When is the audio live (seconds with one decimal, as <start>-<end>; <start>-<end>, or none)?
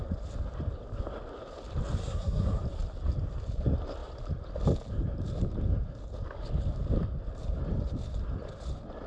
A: 0.0-2.0; 2.6-9.1